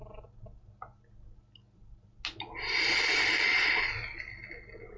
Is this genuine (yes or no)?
yes